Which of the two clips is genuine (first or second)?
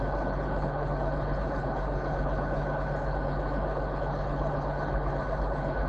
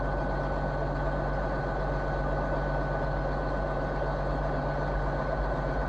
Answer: second